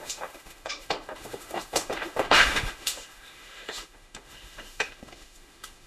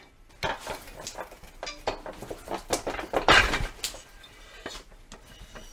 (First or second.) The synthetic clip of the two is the first